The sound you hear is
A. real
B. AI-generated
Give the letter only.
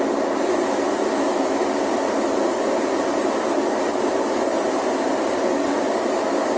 A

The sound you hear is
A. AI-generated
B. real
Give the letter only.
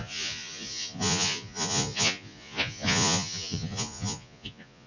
A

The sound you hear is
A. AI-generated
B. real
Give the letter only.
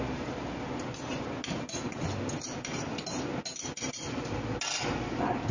B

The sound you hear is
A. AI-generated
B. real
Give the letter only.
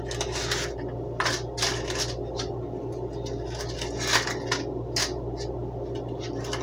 B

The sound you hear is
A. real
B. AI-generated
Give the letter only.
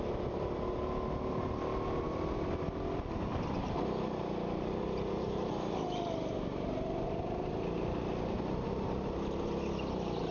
A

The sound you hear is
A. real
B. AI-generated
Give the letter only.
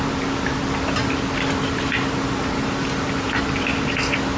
A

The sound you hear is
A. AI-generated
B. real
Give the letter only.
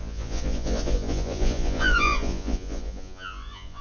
A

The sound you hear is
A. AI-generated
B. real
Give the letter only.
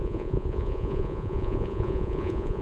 A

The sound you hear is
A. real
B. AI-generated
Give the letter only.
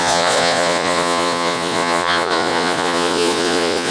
B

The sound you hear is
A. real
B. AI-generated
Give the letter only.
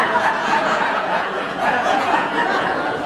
B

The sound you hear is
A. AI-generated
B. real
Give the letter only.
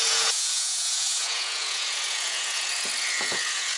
A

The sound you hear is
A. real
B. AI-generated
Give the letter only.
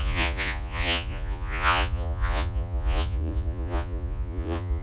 B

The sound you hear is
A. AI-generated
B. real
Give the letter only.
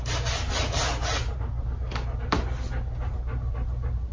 B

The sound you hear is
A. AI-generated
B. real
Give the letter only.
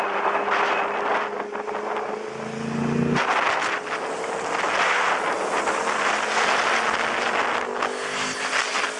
B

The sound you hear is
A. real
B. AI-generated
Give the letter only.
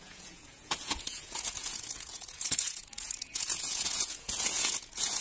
B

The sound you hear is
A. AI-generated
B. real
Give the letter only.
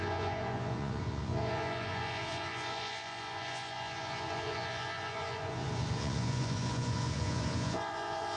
A